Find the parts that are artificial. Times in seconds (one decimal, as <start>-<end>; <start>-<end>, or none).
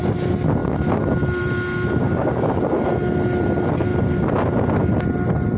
2.0-2.6